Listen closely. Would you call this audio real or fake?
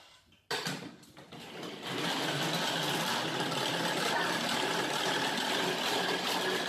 real